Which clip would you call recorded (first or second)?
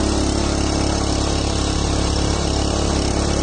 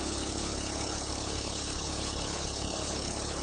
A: first